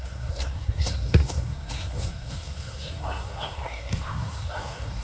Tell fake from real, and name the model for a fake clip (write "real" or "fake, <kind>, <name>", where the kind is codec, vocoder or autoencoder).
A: fake, codec, SNAC